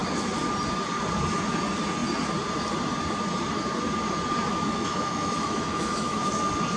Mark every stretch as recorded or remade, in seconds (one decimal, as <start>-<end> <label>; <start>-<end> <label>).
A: 0.0-4.5 recorded; 4.5-6.3 remade; 6.3-6.8 recorded